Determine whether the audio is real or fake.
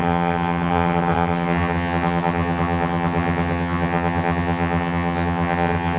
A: fake